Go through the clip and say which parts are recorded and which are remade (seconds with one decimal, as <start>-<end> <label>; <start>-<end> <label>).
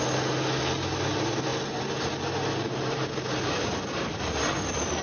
0.0-5.0 recorded